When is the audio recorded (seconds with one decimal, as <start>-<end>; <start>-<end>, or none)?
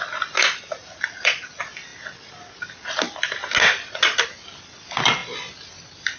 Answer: 0.0-0.8; 1.5-6.2